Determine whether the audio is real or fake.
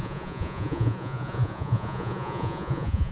fake